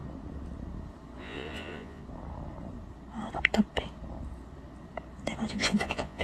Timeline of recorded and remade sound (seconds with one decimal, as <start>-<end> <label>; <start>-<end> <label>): 0.0-1.2 recorded; 1.2-2.0 remade; 2.0-5.5 recorded; 5.5-6.2 remade

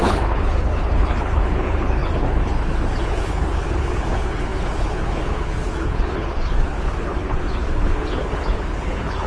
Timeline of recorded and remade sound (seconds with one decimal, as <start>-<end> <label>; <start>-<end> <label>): 0.0-9.3 remade

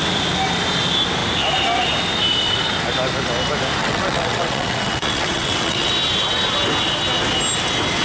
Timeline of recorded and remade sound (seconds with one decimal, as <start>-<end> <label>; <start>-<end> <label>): 0.0-3.8 recorded; 3.8-5.9 remade; 5.9-8.0 recorded

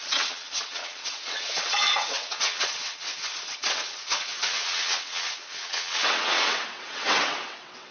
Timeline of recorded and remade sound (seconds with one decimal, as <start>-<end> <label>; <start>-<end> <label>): 0.0-7.9 remade

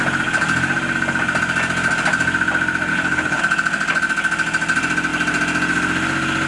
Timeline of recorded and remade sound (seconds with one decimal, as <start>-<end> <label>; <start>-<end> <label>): 0.0-2.9 recorded; 2.9-3.4 remade; 3.4-6.5 recorded